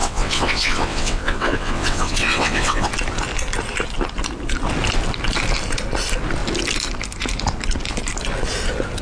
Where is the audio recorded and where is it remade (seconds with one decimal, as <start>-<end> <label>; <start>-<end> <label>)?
0.0-2.9 remade; 2.9-9.0 recorded